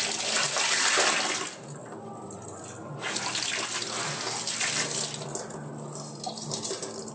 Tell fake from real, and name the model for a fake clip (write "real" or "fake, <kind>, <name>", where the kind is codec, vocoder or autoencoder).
real